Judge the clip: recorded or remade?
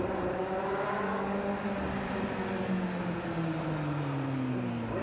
recorded